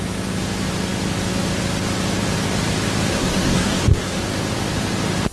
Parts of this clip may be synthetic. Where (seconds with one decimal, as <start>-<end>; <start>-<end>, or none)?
3.1-4.2

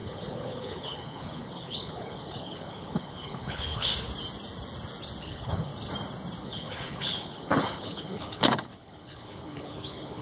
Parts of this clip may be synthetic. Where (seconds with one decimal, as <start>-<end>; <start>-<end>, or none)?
0.0-3.9; 5.2-5.7; 6.4-10.2

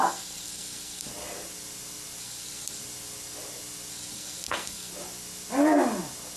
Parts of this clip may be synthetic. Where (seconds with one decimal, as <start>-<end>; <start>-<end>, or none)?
0.0-1.1; 2.2-2.8; 3.9-4.9

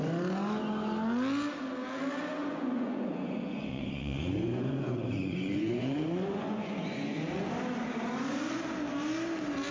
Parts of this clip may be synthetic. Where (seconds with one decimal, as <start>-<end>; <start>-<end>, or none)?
2.4-7.5

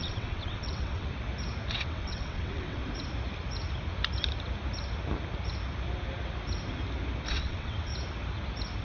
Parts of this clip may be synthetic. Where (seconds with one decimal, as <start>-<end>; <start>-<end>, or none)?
0.0-1.1; 1.7-2.8; 7.3-7.9